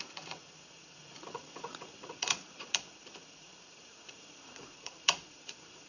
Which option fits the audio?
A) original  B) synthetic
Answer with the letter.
B